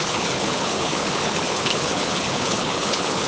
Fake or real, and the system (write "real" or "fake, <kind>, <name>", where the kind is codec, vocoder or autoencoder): fake, codec, HILCodec